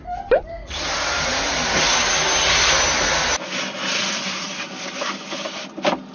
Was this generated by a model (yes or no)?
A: no